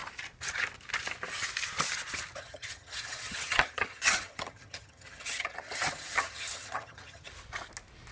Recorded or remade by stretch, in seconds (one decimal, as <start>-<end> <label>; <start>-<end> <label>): 0.0-2.4 recorded; 2.4-7.3 remade; 7.3-8.1 recorded